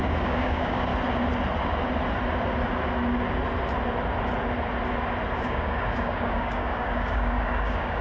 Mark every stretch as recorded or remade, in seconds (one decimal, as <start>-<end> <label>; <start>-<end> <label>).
0.0-0.9 remade; 0.9-5.3 recorded; 5.3-8.0 remade